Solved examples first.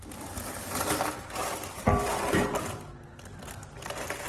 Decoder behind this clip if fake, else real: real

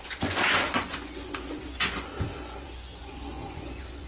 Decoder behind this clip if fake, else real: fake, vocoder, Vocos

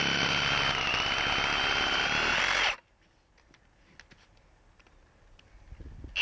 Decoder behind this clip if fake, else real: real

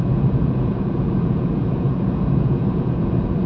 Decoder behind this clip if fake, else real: fake, vocoder, Vocos